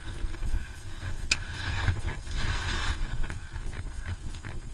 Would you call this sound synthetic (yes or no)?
yes